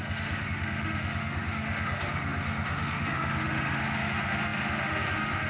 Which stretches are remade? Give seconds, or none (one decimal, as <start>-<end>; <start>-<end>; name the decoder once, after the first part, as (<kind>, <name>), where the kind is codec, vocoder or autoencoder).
0.0-5.5 (autoencoder, DAC-VAE)